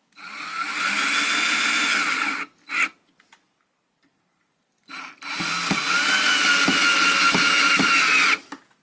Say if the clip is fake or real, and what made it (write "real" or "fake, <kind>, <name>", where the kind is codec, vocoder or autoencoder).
real